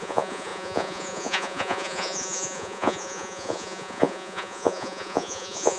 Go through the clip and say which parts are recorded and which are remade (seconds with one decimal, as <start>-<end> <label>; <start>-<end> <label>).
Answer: 0.0-5.8 remade